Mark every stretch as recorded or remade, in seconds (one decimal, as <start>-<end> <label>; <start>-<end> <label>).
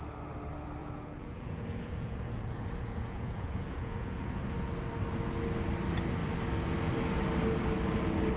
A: 0.0-0.8 recorded; 0.8-4.4 remade; 4.4-8.4 recorded